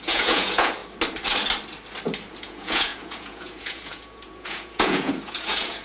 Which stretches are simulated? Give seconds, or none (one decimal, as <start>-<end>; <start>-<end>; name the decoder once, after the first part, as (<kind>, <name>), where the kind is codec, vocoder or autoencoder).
0.0-0.8 (vocoder, Vocos); 2.3-5.8